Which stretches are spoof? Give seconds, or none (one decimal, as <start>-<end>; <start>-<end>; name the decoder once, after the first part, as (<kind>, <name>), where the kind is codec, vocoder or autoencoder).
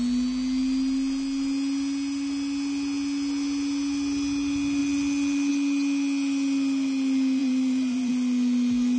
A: 7.4-8.1 (vocoder, BigVGAN v2)